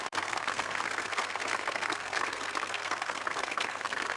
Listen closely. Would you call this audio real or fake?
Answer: fake